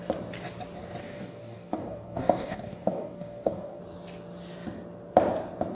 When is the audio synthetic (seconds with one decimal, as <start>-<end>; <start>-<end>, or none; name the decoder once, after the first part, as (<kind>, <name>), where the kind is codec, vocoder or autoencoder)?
1.0-3.8 (codec, DAC)